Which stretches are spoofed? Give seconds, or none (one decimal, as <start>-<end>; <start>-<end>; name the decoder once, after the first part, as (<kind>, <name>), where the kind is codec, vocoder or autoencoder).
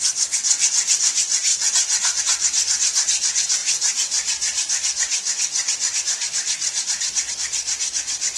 1.5-2.2 (vocoder, Vocos)